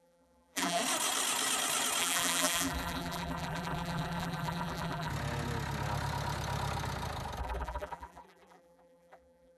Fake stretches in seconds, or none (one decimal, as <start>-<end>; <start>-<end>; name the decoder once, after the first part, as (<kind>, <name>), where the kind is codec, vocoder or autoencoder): 0.0-0.8 (vocoder, BigVGAN v2); 2.0-5.1; 7.4-9.6